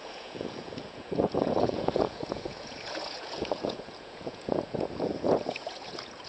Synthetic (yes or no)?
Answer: yes